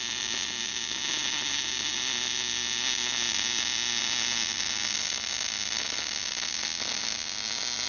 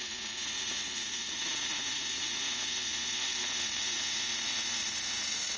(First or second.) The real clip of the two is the first